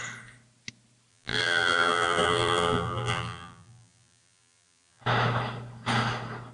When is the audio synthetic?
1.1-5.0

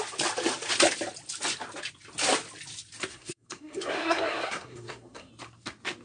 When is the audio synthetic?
3.1-5.3

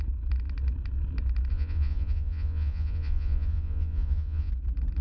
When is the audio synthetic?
1.5-4.5

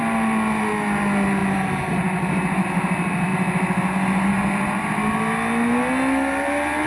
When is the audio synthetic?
none

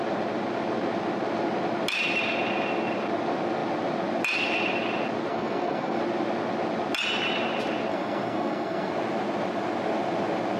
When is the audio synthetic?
5.3-6.0; 7.9-8.9